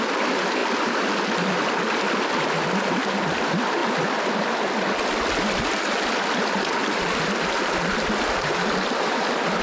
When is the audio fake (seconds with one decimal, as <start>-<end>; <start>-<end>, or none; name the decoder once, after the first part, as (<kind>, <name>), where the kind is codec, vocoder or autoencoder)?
none